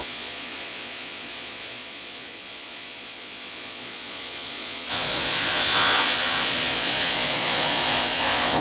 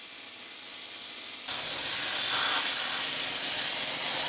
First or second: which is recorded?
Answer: second